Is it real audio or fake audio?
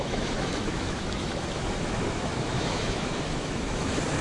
fake